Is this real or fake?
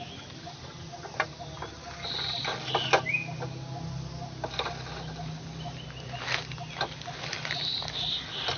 real